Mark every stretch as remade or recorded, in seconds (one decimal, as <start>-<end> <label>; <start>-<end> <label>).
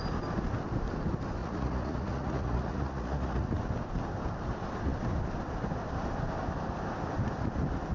0.0-1.4 recorded; 1.4-3.5 remade; 3.5-7.9 recorded